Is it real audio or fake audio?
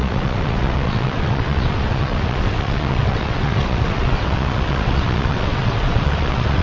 fake